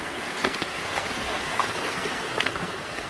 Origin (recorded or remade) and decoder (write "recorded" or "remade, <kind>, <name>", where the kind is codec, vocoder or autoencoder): remade, codec, SNAC